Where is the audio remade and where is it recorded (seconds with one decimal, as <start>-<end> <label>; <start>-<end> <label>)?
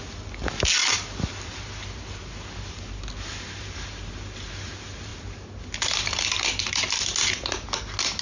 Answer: 0.0-8.2 recorded